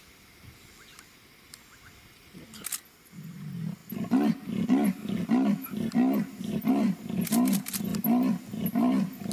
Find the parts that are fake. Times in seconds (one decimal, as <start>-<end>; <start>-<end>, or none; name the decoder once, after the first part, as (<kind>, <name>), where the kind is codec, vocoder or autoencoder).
none